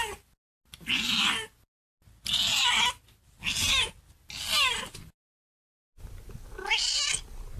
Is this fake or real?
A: real